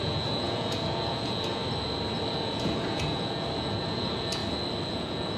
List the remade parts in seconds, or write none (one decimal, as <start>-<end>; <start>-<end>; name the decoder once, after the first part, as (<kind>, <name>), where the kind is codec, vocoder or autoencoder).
0.0-1.6 (vocoder, Vocos); 2.3-4.4; 4.9-5.4

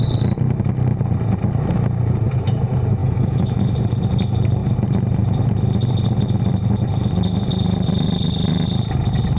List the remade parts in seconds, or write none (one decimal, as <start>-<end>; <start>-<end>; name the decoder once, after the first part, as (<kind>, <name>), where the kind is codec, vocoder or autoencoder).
3.0-3.6 (autoencoder, DAC-VAE)

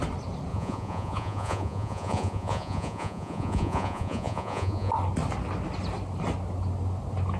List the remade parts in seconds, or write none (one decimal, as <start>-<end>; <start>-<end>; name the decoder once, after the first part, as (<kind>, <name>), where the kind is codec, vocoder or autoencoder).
0.5-4.9 (vocoder, Vocos)

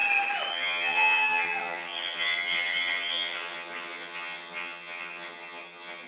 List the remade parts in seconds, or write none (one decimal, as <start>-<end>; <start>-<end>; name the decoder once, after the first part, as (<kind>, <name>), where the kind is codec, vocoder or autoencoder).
0.5-6.1 (vocoder, HiFi-GAN)

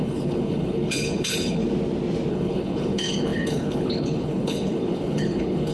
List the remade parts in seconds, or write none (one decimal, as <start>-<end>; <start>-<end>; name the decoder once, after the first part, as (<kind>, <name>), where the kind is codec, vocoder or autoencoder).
0.0-1.6 (codec, HILCodec); 2.3-5.7

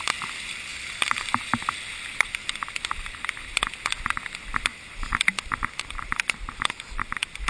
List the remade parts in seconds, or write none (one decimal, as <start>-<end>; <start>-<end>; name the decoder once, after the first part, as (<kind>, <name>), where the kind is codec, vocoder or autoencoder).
0.0-0.7 (vocoder, BigVGAN v2); 2.3-4.7; 5.8-7.5

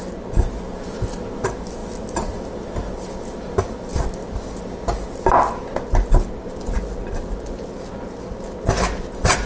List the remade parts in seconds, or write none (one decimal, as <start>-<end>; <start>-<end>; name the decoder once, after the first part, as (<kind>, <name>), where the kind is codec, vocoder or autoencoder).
none